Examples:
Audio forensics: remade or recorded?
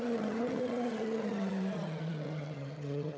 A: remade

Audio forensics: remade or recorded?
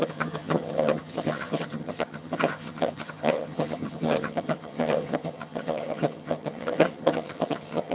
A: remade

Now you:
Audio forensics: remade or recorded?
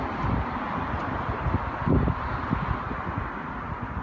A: recorded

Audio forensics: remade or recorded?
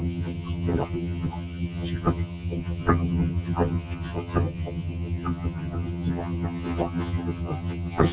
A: remade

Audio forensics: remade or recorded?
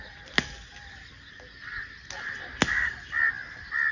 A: recorded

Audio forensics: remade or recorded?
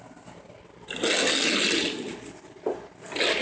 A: recorded